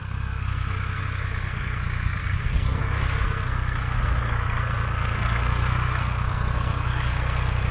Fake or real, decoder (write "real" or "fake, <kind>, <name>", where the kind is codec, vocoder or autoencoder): fake, codec, SNAC